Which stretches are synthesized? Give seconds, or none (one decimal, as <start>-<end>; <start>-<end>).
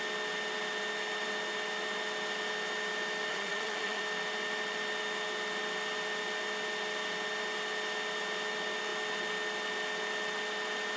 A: 3.3-4.0